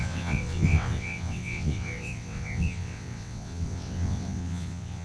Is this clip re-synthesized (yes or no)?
yes